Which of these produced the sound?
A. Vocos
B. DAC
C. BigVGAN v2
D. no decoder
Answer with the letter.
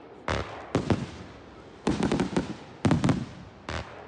D